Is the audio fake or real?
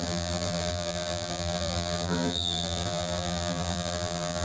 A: fake